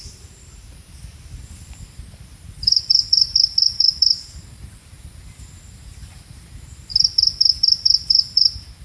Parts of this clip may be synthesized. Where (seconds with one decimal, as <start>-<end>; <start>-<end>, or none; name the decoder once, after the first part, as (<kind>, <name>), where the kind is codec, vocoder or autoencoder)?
0.0-6.9 (vocoder, BigVGAN v2); 8.1-8.8